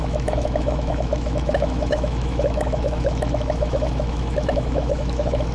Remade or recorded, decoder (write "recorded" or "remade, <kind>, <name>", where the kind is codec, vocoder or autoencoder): remade, autoencoder, DAC-VAE